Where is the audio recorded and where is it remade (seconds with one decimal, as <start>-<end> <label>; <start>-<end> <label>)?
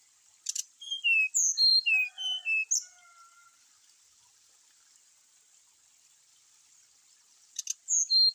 0.0-8.3 recorded